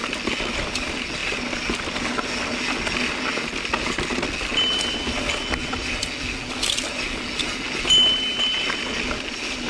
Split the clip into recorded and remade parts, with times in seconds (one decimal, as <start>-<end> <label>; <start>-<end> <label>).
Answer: 0.0-9.7 recorded